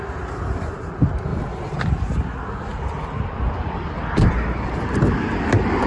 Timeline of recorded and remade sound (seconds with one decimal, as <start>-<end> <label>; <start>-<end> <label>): 0.0-1.3 recorded; 1.3-1.8 remade; 1.8-2.7 recorded; 2.7-4.7 remade; 4.7-5.9 recorded